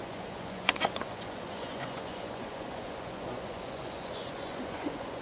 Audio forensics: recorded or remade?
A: remade